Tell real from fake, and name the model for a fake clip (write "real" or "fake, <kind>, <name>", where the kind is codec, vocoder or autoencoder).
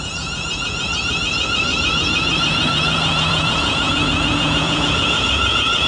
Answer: fake, vocoder, Vocos